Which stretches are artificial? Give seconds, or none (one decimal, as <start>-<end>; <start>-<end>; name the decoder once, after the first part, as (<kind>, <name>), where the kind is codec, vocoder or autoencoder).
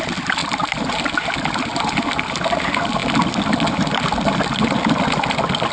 0.4-1.0 (vocoder, BigVGAN v2)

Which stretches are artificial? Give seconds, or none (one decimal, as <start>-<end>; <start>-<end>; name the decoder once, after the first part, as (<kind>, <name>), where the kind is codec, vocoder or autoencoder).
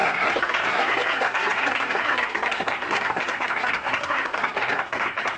0.0-5.4 (codec, SNAC)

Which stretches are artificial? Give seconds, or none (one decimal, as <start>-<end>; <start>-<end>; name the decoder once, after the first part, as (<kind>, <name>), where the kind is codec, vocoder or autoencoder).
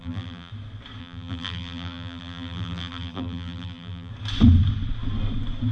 0.0-0.5 (vocoder, BigVGAN v2); 1.0-4.1